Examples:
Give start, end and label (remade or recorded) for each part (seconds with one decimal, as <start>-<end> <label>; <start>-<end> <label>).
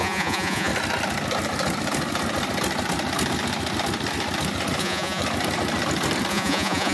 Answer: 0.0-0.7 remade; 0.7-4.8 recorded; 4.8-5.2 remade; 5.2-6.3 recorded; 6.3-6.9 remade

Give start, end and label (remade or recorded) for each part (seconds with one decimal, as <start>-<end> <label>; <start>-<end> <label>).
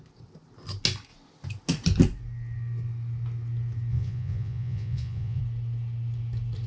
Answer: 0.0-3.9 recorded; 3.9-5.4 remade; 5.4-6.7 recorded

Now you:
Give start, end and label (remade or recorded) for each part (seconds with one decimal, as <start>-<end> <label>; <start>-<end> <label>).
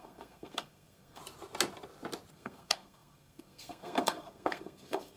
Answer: 0.0-1.2 remade; 1.2-2.3 recorded; 2.3-5.2 remade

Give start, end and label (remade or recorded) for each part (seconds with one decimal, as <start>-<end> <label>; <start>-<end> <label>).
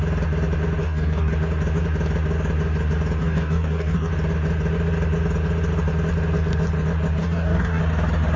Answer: 0.0-0.8 recorded; 0.8-1.3 remade; 1.3-3.2 recorded; 3.2-4.1 remade; 4.1-7.2 recorded; 7.2-7.8 remade; 7.8-8.4 recorded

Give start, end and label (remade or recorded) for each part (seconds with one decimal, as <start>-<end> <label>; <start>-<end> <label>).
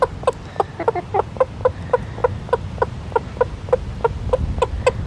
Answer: 0.0-5.1 recorded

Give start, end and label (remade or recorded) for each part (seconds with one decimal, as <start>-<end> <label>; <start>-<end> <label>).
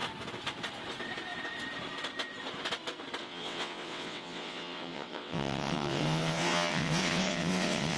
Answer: 0.0-3.2 recorded; 3.2-8.0 remade